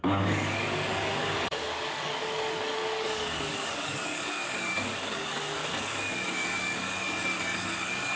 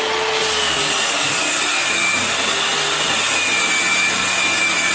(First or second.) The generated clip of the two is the first